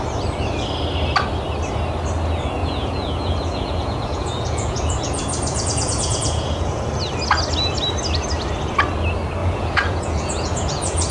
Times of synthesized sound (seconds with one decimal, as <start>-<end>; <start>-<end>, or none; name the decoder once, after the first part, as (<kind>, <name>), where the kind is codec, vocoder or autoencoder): 2.6-6.9 (vocoder, Vocos); 9.4-11.1